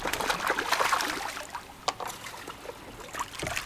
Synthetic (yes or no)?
no